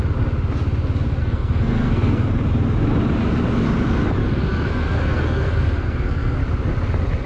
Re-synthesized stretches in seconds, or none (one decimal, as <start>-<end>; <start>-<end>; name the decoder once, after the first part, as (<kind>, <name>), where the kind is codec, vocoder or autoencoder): 1.2-2.3 (codec, SNAC); 4.2-6.4